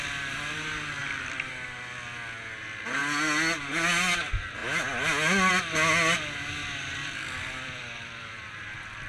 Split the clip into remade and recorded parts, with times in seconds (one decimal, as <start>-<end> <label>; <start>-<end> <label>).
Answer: 0.0-1.0 recorded; 1.0-1.5 remade; 1.5-7.0 recorded; 7.0-8.5 remade; 8.5-9.1 recorded